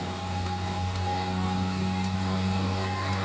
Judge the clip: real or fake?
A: fake